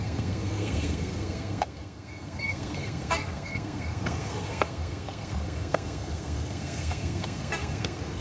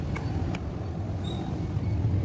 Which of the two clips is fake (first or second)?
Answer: first